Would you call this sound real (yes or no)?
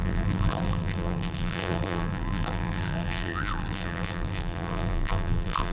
no